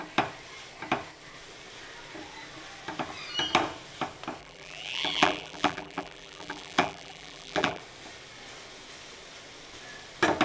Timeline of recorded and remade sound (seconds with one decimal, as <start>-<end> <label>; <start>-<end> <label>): 0.0-4.4 recorded; 4.4-7.8 remade; 7.8-10.4 recorded